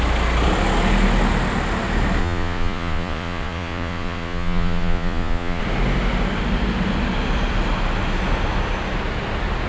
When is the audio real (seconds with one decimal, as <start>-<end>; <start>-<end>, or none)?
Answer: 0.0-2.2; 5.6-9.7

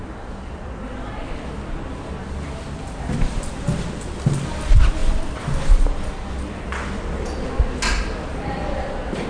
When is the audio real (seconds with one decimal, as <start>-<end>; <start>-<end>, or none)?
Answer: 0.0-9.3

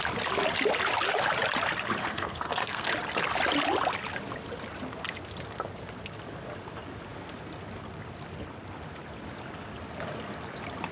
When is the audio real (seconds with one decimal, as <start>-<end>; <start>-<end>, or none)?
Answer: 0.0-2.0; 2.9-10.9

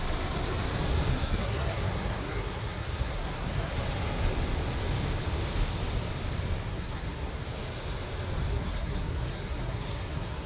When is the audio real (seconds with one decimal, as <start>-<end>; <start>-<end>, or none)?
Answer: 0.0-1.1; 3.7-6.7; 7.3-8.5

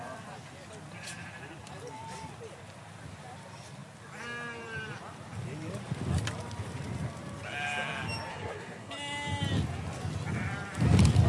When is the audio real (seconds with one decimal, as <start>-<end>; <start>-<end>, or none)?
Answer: 0.0-8.3; 8.9-11.3

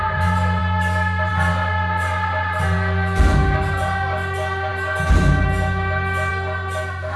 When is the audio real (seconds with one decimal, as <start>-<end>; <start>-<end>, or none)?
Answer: 0.0-7.2